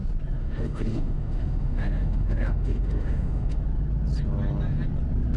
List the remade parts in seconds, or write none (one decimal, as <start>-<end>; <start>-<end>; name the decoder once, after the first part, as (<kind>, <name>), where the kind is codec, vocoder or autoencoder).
0.4-3.6 (autoencoder, DAC-VAE)